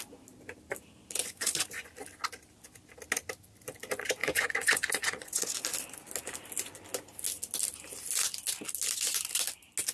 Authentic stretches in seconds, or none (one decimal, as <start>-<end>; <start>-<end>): 0.0-1.2; 1.9-4.2; 5.5-9.9